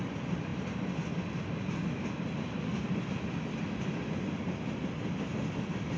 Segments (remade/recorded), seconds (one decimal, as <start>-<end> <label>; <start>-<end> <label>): 0.0-6.0 recorded